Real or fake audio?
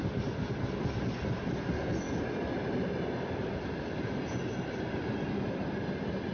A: real